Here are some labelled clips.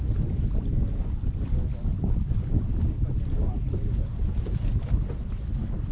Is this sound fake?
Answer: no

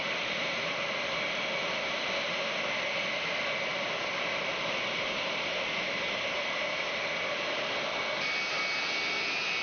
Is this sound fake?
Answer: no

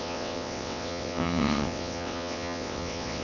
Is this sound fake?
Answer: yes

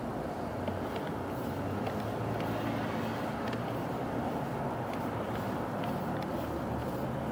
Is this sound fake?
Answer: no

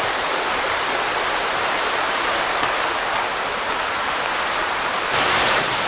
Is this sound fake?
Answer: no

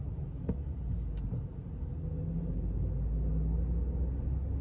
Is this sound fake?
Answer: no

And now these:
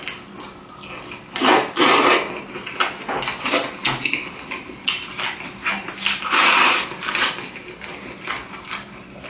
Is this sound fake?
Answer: no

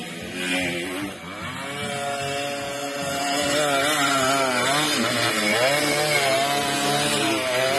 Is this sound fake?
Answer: no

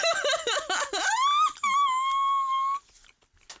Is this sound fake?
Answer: no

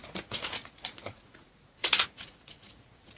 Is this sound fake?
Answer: yes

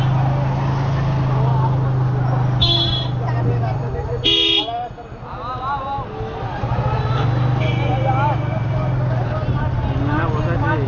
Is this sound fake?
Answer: no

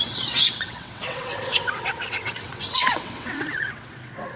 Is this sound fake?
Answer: yes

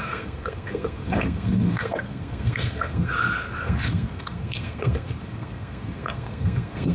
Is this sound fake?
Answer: yes